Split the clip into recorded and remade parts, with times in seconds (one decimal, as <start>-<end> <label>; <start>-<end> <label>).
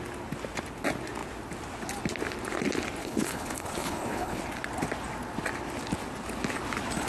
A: 0.0-3.0 recorded; 3.0-4.4 remade; 4.4-7.1 recorded